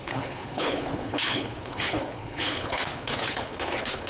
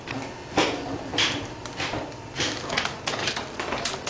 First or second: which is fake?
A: first